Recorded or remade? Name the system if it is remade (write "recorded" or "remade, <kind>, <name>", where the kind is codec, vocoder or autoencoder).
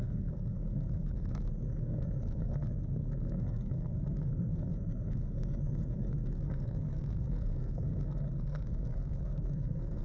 remade, codec, SNAC